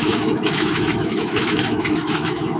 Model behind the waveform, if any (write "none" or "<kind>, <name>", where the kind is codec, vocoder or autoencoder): autoencoder, DAC-VAE